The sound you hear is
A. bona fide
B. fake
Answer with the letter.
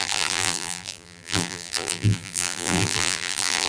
B